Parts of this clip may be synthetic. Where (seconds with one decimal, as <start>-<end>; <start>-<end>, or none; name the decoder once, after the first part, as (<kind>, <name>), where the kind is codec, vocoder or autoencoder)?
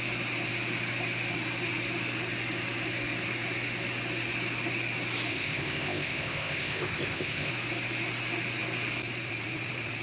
5.3-7.5 (codec, ZipCodec)